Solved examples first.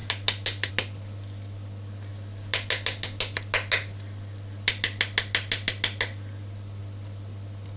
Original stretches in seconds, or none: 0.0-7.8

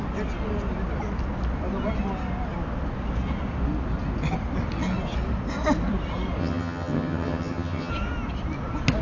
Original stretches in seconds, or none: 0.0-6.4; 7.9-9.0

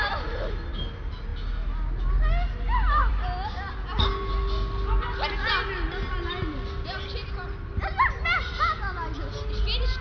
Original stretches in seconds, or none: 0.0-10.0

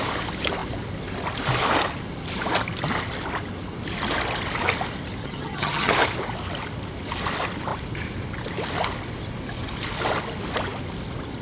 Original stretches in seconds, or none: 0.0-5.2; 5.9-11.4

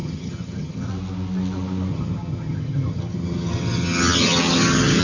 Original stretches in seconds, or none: 0.9-1.9